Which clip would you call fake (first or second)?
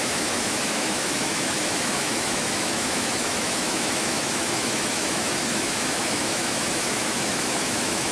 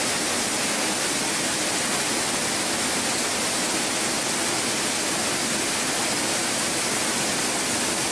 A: first